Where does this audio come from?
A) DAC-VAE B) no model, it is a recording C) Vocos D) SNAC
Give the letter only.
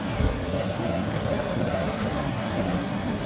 D